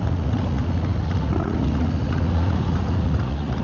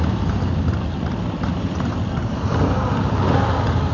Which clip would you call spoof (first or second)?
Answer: first